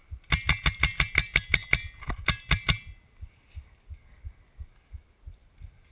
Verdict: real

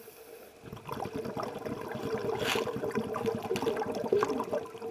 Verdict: real